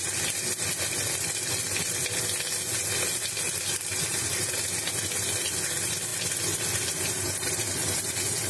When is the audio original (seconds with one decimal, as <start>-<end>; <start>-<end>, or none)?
0.0-8.5